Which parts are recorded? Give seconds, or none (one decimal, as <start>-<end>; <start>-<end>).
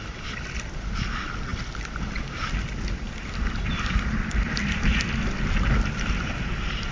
0.0-6.9